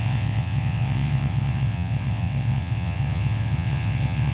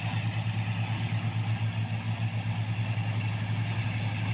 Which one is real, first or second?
second